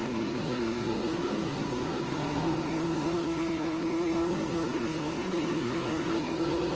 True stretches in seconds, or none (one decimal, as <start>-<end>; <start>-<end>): none